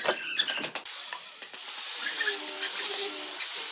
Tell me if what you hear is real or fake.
real